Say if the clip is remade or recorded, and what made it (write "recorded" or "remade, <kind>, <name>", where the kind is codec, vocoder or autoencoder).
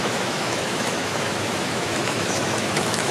remade, autoencoder, DAC-VAE